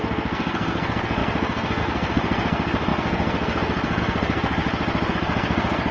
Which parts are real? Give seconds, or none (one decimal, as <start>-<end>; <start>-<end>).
4.6-5.1